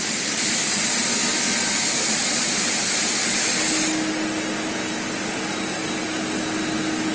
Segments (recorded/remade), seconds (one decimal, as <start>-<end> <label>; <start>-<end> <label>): 0.0-7.1 recorded